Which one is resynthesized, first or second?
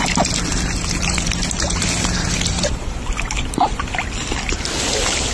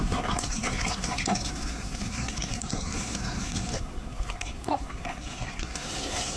second